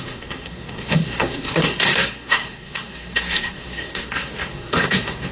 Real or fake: fake